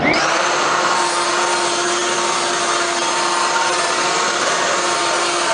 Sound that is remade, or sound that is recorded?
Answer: recorded